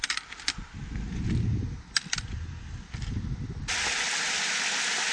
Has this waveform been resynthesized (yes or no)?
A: no